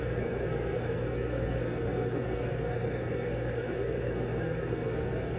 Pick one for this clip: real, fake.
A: fake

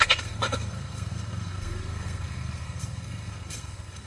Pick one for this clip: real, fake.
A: fake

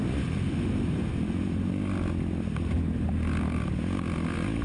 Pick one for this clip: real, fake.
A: real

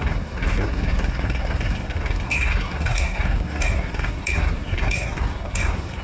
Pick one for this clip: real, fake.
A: fake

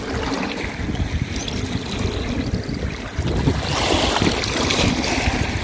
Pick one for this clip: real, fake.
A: real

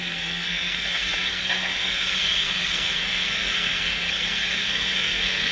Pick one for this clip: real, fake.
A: fake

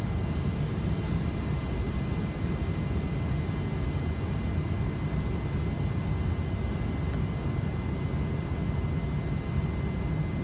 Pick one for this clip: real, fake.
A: real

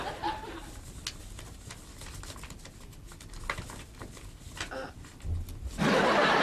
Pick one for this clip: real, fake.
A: real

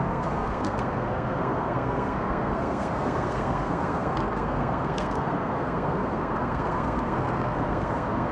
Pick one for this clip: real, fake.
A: fake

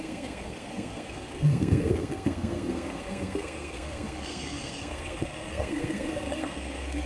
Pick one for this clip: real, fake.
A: fake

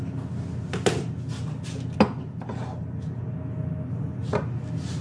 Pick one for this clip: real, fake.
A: real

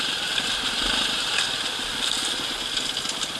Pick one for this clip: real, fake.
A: real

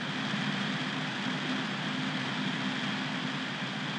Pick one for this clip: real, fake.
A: real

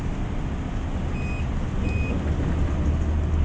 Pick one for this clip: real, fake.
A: real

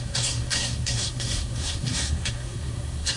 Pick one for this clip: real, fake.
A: fake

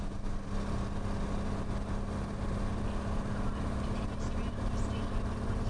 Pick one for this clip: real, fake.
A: real